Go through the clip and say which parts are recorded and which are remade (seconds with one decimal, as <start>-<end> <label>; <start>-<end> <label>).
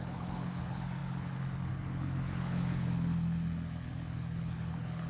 0.0-5.1 remade